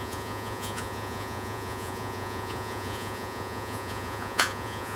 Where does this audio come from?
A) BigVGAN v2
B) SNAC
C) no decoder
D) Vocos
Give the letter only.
D